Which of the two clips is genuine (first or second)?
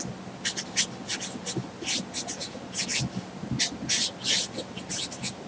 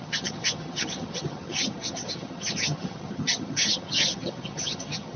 first